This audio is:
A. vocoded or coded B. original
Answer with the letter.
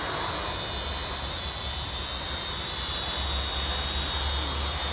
B